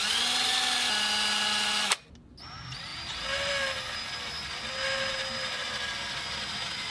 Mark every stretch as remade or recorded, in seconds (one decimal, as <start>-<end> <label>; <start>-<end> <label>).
0.0-6.9 recorded